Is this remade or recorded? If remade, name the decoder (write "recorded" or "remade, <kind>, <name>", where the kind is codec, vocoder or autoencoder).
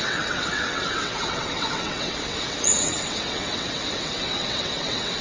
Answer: remade, vocoder, WaveNeXt